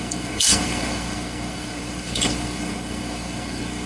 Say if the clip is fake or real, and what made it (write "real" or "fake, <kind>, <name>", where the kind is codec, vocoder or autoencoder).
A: fake, codec, SNAC